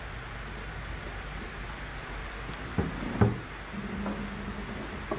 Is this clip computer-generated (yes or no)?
no